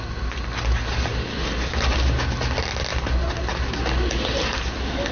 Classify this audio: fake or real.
real